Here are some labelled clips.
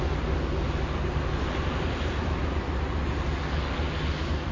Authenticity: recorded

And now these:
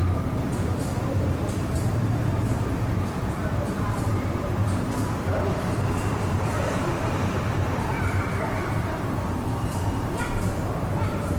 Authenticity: remade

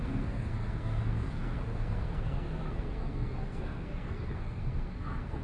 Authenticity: remade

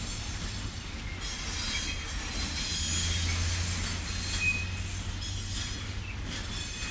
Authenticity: recorded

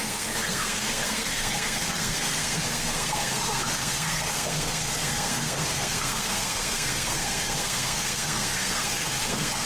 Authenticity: remade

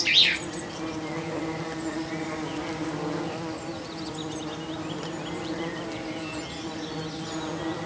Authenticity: recorded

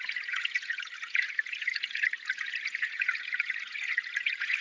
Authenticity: remade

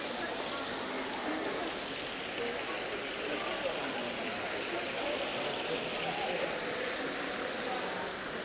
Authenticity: recorded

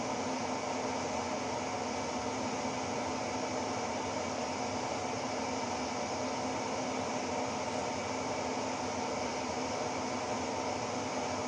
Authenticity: recorded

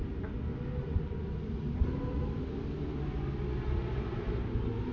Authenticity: recorded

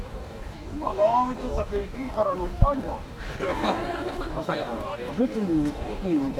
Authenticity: remade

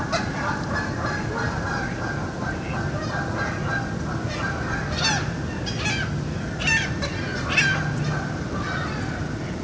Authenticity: recorded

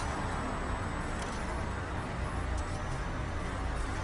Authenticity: recorded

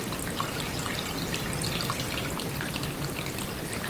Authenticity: recorded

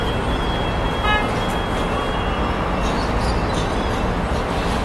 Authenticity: recorded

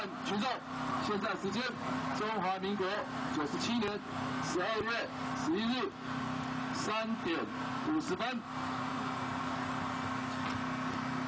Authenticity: recorded